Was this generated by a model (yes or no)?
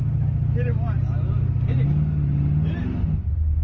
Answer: no